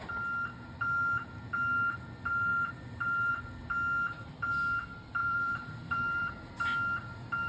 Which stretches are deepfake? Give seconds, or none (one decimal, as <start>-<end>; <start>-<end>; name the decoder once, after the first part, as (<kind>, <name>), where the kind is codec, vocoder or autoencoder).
2.5-3.3 (vocoder, BigVGAN v2); 5.2-6.3